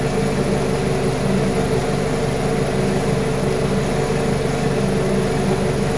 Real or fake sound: real